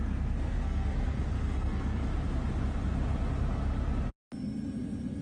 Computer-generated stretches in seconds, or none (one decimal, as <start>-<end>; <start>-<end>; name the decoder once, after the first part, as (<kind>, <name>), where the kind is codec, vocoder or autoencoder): 0.0-2.1 (codec, SNAC)